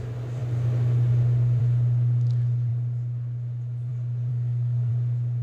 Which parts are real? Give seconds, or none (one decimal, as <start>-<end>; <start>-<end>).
0.0-4.3; 4.9-5.4